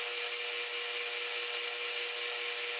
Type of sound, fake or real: real